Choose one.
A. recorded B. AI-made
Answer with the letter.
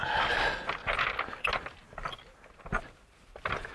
A